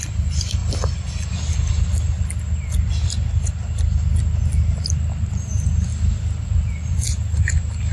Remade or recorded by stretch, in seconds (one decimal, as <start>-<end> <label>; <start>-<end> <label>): 0.0-0.6 remade; 0.6-5.3 recorded; 5.3-5.9 remade; 5.9-6.9 recorded; 6.9-7.9 remade